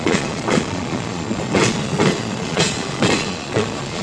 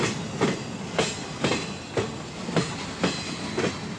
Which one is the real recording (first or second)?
second